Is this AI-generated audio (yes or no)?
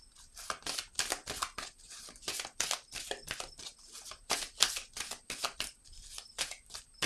no